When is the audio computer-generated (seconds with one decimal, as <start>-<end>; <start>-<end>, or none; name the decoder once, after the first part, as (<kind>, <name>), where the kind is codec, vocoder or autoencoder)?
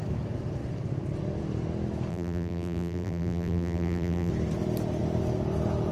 2.1-4.3 (vocoder, BigVGAN v2)